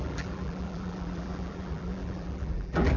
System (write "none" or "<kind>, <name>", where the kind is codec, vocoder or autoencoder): vocoder, BigVGAN v2